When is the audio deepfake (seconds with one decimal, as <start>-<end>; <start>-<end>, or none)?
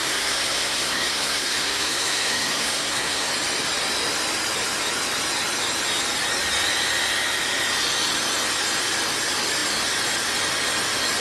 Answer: 0.0-3.3